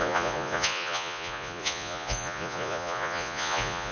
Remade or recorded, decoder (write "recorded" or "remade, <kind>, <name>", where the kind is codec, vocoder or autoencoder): remade, vocoder, Vocos